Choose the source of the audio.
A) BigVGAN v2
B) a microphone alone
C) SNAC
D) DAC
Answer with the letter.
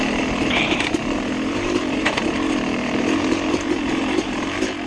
A